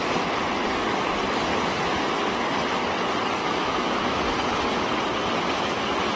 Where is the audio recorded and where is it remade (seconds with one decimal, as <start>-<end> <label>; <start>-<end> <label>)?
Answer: 0.0-1.5 recorded; 1.5-2.3 remade; 2.3-3.4 recorded; 3.4-4.2 remade; 4.2-6.2 recorded